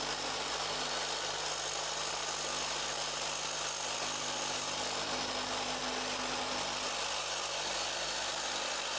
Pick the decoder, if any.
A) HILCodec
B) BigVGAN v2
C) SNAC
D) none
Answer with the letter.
D